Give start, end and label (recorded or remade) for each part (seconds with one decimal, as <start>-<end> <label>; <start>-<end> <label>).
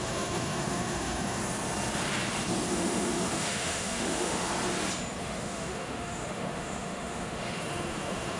0.0-1.4 remade; 1.4-2.7 recorded; 2.7-4.5 remade; 4.5-5.2 recorded; 5.2-8.4 remade